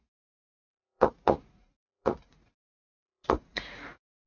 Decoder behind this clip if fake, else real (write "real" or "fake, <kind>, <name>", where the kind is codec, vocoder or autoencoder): fake, vocoder, Vocos